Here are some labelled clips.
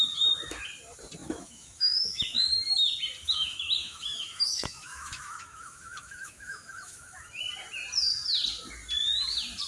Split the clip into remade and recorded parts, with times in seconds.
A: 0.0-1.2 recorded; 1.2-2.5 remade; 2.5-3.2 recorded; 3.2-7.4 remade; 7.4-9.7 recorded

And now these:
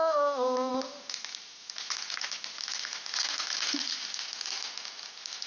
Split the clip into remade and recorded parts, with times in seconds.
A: 0.0-5.5 recorded

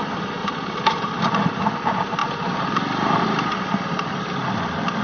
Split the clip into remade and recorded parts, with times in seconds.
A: 0.0-0.4 recorded; 0.4-1.6 remade; 1.6-5.0 recorded

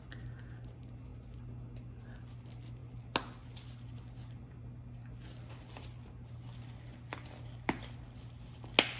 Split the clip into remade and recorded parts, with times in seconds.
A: 0.0-9.0 recorded

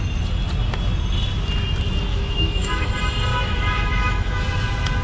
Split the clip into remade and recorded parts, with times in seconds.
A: 0.0-2.1 recorded; 2.1-2.9 remade; 2.9-3.3 recorded; 3.3-4.4 remade; 4.4-5.0 recorded

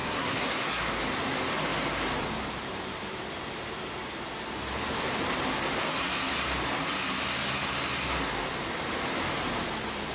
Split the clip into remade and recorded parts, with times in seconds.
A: 0.0-0.8 remade; 0.8-10.1 recorded

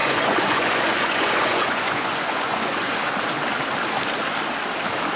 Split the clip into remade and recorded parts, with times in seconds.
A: 0.0-3.1 remade; 3.1-5.2 recorded